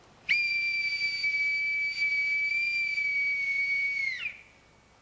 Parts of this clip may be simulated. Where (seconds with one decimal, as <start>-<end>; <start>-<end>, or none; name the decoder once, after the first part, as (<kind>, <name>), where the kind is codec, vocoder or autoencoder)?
none